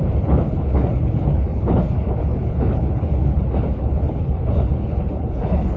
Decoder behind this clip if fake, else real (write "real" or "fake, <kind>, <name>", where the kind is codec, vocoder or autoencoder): fake, codec, HILCodec